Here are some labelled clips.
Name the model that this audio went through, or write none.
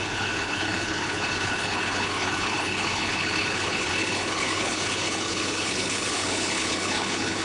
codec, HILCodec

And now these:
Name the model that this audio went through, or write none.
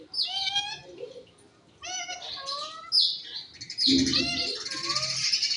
none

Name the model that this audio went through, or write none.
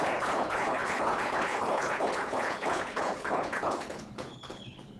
codec, HILCodec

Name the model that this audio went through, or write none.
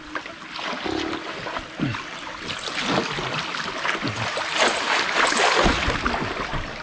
none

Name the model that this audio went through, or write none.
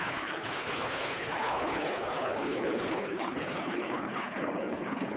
codec, HILCodec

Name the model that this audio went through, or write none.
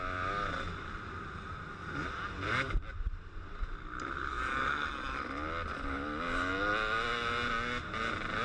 none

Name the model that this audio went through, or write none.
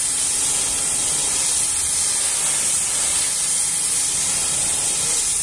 none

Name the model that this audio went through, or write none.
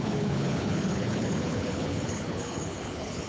codec, HILCodec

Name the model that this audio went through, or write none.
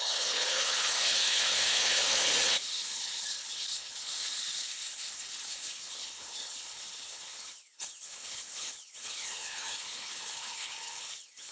codec, HILCodec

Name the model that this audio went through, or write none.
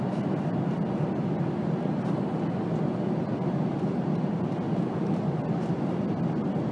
none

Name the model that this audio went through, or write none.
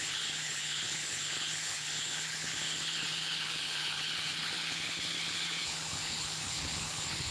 codec, HILCodec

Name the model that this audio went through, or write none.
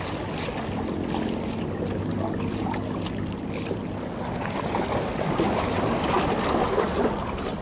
none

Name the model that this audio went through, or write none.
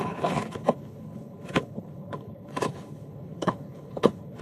codec, HILCodec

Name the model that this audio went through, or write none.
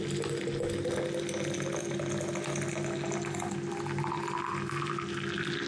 none